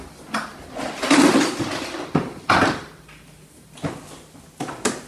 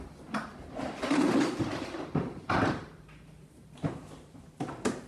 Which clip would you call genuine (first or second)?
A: first